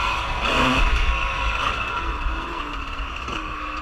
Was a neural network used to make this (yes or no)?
yes